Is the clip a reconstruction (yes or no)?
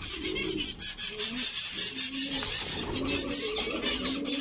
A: no